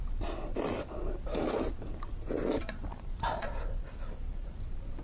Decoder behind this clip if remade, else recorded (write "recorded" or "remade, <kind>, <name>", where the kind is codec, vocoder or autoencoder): remade, vocoder, BigVGAN v2